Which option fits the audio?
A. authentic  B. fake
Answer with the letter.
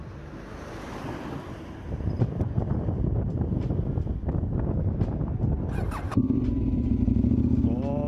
A